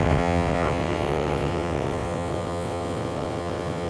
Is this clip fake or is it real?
fake